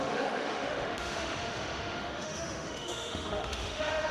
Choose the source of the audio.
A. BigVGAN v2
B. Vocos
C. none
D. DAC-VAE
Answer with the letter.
D